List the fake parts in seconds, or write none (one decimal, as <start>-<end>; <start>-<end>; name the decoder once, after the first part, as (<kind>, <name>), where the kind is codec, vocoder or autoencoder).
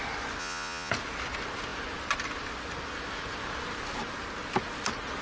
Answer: 0.4-0.9 (vocoder, Vocos)